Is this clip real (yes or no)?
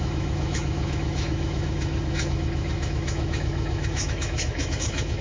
no